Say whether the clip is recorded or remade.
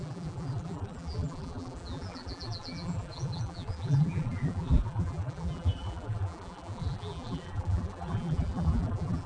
remade